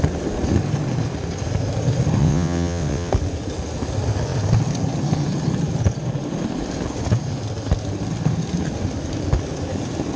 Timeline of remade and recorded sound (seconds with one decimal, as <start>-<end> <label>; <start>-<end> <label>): 0.0-2.2 recorded; 2.2-3.1 remade; 3.1-10.2 recorded